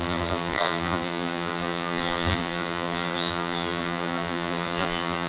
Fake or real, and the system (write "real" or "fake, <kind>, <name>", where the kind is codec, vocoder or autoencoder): fake, vocoder, BigVGAN v2